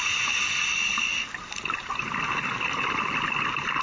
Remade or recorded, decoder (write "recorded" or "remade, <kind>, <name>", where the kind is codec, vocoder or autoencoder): recorded